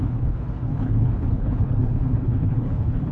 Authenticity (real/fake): fake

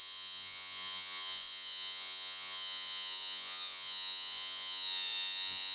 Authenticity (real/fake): fake